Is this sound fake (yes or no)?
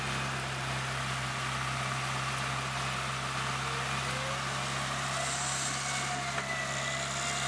no